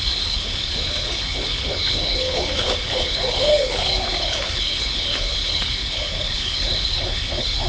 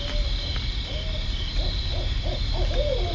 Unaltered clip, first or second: second